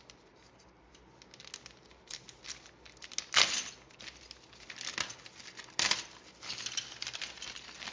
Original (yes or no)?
yes